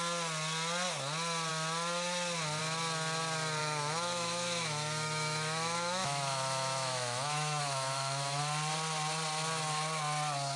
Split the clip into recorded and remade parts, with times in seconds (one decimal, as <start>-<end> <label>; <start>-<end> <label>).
0.0-3.6 recorded; 3.6-8.4 remade; 8.4-10.6 recorded